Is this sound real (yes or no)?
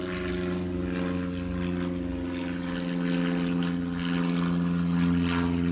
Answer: yes